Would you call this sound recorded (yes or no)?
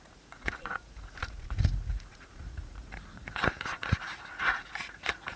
no